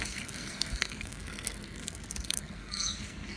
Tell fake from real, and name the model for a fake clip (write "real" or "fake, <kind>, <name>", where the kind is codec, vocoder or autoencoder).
fake, codec, SNAC